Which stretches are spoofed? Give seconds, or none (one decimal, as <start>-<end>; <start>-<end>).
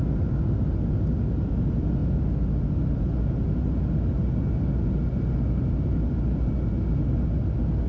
none